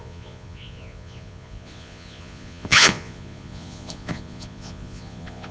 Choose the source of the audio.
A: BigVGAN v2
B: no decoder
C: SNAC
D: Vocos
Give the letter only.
D